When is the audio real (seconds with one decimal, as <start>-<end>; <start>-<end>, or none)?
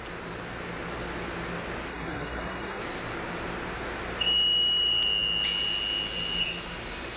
0.0-1.9; 2.8-7.2